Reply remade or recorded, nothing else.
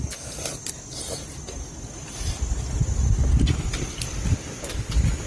recorded